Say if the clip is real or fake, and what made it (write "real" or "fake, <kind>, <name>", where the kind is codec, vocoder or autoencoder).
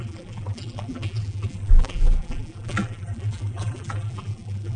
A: fake, vocoder, BigVGAN v2